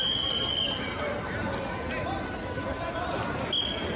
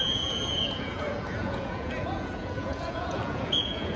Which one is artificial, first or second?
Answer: second